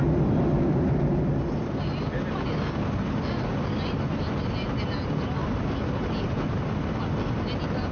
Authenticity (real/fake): real